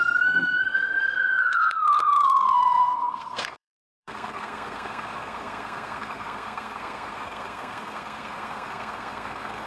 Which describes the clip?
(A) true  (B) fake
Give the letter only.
B